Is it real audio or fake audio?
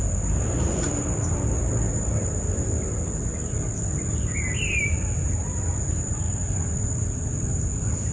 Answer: fake